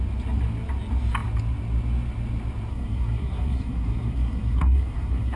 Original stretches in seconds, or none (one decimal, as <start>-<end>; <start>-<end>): 0.0-2.7